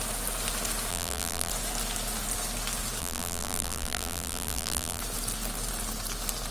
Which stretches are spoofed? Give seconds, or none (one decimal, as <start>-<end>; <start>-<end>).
0.9-1.5; 3.0-5.0